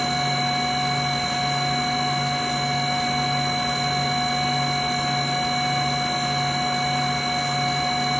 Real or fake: real